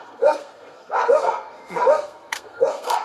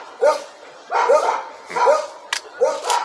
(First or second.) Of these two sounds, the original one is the second